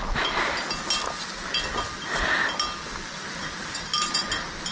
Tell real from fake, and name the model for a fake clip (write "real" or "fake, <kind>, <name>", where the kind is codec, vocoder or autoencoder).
real